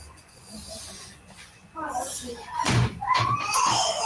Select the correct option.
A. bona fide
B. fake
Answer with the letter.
B